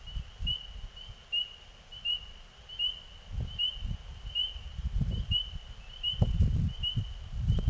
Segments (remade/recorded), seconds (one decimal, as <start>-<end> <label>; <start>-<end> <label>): 0.0-4.7 recorded; 4.7-5.5 remade; 5.5-7.7 recorded